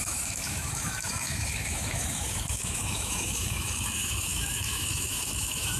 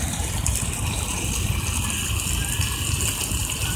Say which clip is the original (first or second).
second